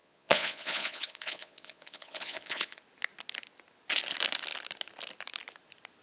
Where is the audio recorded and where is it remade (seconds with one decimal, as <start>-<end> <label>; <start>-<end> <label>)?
0.0-2.8 remade; 2.8-6.0 recorded